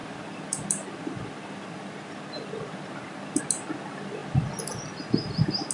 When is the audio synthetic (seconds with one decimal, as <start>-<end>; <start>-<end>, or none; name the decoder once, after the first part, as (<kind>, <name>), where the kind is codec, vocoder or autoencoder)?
none